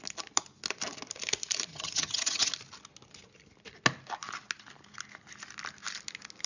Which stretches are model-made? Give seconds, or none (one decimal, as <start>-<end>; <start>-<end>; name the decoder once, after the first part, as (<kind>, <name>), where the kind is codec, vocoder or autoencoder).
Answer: 1.7-2.5 (vocoder, HiFi-GAN)